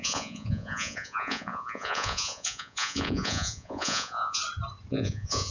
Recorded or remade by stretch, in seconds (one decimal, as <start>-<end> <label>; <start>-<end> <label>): 0.0-4.4 remade; 4.4-4.9 recorded; 4.9-5.5 remade